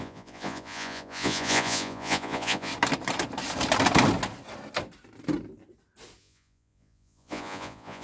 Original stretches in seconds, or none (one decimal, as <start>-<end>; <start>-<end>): 2.7-6.2